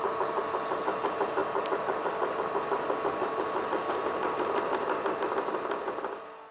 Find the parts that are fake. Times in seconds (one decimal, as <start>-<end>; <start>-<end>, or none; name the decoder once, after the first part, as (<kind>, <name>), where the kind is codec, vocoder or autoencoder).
none